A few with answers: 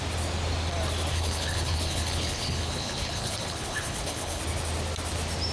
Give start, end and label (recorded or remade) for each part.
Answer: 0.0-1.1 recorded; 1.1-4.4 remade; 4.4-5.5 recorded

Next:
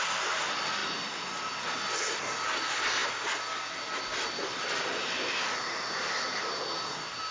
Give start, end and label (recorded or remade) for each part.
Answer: 0.0-7.3 recorded

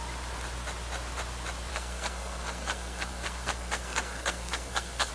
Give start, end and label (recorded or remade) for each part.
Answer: 0.0-1.7 recorded; 1.7-5.1 remade

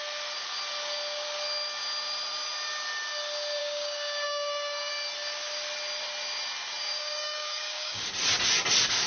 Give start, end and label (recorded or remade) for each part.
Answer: 0.0-3.6 recorded; 3.6-4.9 remade; 4.9-6.8 recorded; 6.8-8.0 remade; 8.0-9.1 recorded

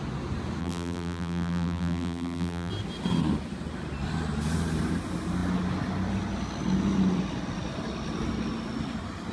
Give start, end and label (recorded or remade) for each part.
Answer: 0.0-0.6 recorded; 0.6-2.7 remade; 2.7-9.3 recorded